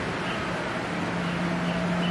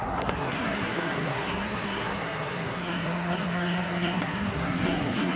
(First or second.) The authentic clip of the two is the first